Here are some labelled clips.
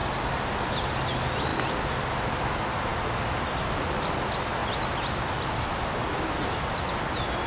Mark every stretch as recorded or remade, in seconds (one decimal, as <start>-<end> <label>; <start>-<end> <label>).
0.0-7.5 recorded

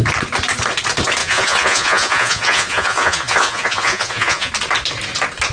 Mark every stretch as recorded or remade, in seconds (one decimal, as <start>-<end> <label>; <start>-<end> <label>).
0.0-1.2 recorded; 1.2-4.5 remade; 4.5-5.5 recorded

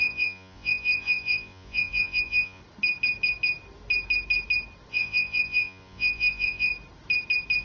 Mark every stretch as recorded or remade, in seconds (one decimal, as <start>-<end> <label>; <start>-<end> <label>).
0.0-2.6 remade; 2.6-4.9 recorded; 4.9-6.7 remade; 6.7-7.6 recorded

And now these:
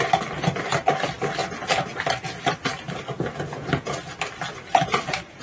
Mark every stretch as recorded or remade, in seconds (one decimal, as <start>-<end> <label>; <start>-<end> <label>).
0.0-5.4 recorded

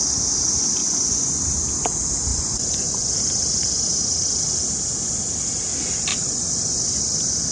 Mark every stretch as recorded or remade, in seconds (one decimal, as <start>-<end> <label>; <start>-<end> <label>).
0.0-0.8 recorded; 0.8-1.4 remade; 1.4-2.3 recorded; 2.3-3.1 remade; 3.1-6.1 recorded; 6.1-7.0 remade; 7.0-7.5 recorded